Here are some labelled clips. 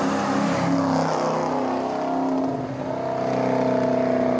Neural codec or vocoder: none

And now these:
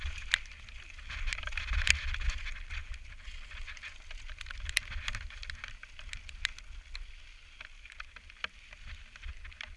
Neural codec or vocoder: none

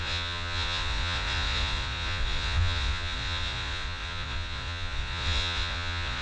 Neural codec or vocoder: vocoder, Vocos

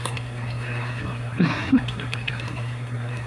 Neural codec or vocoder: codec, SNAC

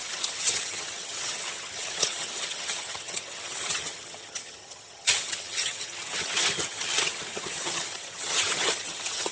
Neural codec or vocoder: vocoder, HiFi-GAN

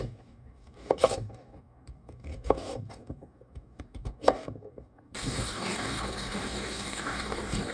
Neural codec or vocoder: codec, DAC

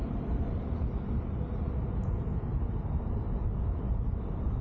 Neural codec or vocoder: none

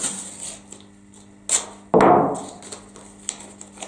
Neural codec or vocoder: none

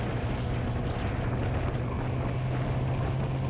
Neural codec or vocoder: none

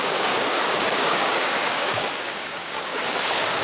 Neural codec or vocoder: codec, DAC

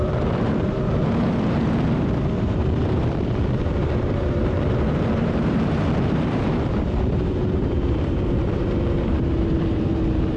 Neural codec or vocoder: vocoder, BigVGAN v2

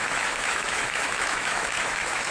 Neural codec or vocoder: autoencoder, DAC-VAE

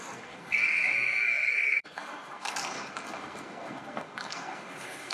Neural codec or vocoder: codec, SNAC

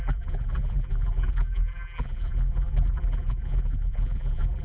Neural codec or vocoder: vocoder, BigVGAN v2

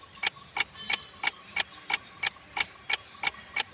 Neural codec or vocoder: none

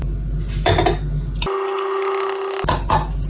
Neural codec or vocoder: none